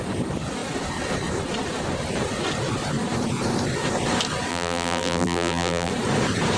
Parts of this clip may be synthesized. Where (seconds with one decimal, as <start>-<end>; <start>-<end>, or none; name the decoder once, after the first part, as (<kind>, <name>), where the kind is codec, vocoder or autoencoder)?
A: 4.5-5.9 (vocoder, BigVGAN v2)